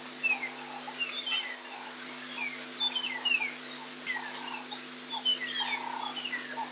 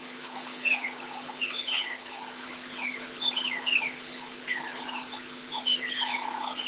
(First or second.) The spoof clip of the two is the second